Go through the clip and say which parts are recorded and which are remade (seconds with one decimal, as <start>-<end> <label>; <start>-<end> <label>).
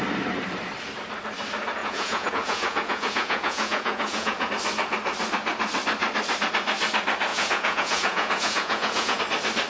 0.0-1.8 recorded; 1.8-4.5 remade; 4.5-7.3 recorded; 7.3-9.2 remade; 9.2-9.7 recorded